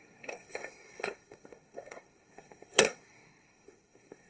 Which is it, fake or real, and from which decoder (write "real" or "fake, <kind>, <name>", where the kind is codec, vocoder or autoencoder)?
fake, codec, SNAC